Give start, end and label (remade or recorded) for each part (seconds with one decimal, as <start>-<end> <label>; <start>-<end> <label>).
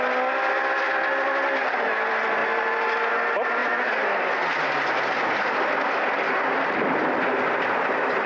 0.0-8.3 recorded